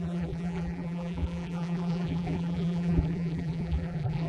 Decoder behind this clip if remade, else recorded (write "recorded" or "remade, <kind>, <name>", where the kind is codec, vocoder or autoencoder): remade, vocoder, BigVGAN v2